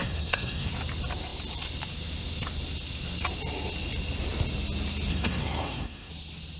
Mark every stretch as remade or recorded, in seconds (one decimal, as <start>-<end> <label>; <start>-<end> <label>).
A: 0.0-0.7 remade; 0.7-5.1 recorded; 5.1-6.1 remade; 6.1-6.6 recorded